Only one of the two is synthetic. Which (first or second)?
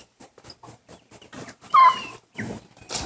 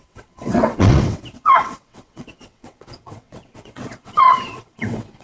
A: second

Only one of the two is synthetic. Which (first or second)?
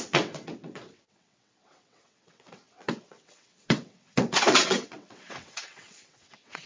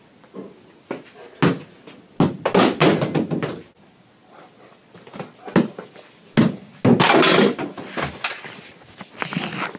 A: first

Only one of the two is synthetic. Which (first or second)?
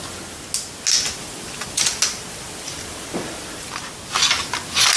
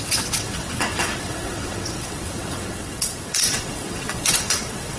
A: second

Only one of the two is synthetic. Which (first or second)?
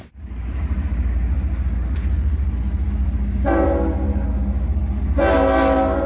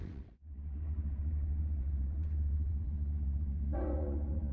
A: second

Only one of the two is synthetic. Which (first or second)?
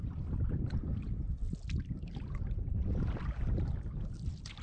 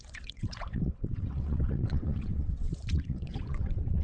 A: second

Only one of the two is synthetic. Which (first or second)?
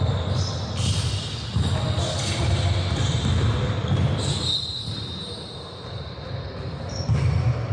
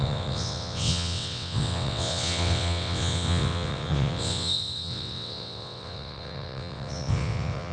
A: second